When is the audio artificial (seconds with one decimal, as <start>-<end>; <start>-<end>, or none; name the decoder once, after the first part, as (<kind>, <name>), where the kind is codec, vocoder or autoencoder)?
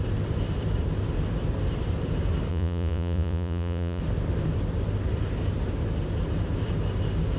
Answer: 2.5-4.0 (vocoder, Vocos)